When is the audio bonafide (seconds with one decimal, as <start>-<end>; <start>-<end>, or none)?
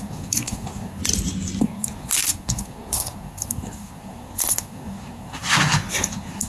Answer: 1.0-1.6